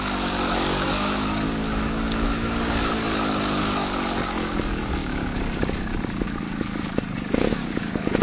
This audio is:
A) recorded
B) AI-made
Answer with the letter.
B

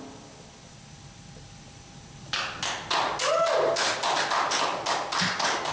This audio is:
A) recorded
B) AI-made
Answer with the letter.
A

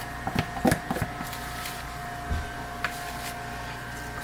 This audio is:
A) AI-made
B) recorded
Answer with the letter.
B